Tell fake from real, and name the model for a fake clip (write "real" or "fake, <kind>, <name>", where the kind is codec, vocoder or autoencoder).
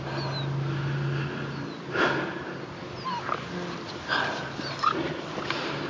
real